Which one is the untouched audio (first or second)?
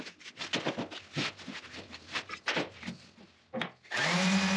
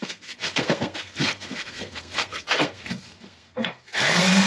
first